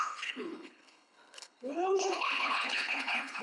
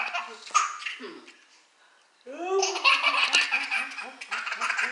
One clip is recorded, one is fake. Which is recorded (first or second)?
second